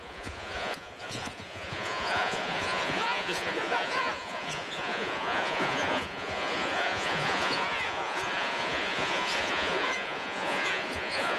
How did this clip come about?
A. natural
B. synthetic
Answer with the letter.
B